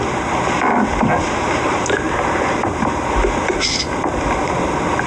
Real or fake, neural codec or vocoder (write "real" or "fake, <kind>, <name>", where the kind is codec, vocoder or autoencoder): real